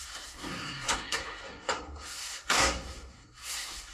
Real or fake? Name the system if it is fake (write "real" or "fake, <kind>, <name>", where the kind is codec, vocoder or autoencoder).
fake, codec, SNAC